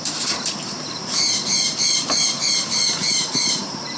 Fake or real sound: fake